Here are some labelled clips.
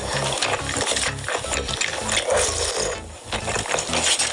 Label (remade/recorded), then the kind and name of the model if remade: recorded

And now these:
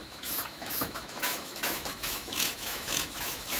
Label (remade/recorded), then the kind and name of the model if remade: remade, autoencoder, DAC-VAE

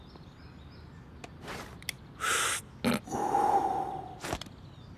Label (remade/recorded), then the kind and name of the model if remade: recorded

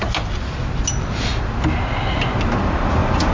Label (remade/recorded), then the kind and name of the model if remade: recorded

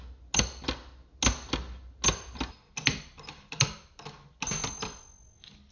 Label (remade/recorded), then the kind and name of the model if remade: recorded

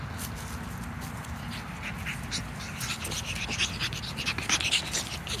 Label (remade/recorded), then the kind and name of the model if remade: recorded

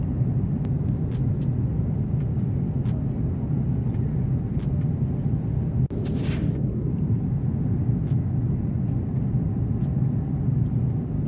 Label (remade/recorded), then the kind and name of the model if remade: recorded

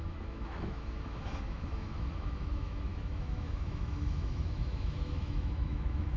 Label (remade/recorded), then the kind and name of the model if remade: remade, autoencoder, DAC-VAE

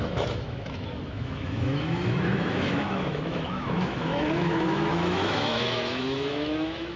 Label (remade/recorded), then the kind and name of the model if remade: remade, autoencoder, DAC-VAE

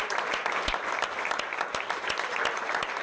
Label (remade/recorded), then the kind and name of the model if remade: recorded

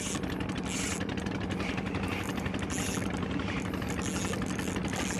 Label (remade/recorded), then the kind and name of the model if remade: recorded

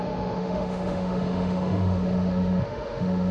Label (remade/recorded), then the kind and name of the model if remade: remade, autoencoder, DAC-VAE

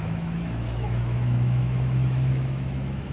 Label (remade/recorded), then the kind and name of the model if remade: remade, autoencoder, DAC-VAE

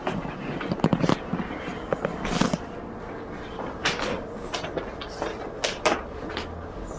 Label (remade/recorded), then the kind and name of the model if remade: recorded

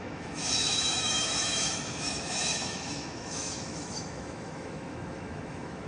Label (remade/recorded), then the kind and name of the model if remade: remade, autoencoder, DAC-VAE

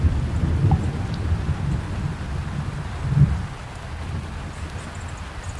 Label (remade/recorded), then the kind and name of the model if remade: recorded